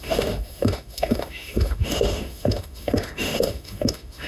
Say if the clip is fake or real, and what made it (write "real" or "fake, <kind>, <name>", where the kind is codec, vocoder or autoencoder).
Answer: fake, autoencoder, DAC-VAE